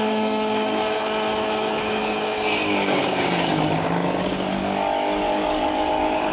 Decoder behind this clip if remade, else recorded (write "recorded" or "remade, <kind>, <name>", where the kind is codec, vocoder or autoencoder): remade, codec, DAC